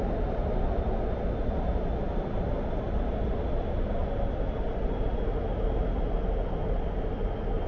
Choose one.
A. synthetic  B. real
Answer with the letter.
B